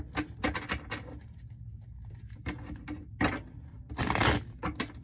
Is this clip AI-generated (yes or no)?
no